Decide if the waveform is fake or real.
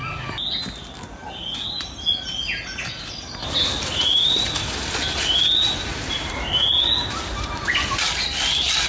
real